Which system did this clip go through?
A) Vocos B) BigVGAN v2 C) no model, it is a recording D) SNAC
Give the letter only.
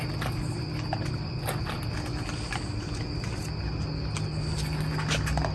C